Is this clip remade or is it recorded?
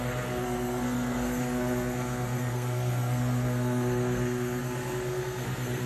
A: remade